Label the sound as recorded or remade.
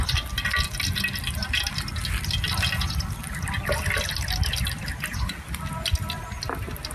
recorded